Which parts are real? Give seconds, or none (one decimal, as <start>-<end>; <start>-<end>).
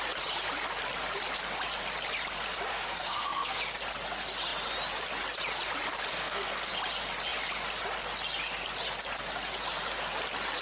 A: 0.0-2.7; 3.6-6.1; 6.7-10.6